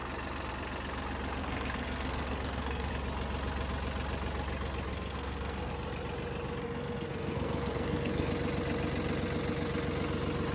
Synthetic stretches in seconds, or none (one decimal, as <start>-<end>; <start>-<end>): 1.4-2.9; 4.9-5.7; 6.6-8.3